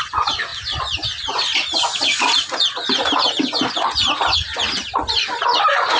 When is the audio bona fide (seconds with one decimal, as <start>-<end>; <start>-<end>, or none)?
0.0-6.0